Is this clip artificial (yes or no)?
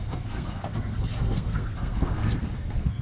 yes